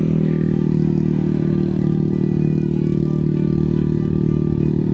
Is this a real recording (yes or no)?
yes